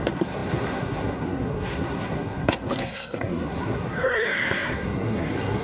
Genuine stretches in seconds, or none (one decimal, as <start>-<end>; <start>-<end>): none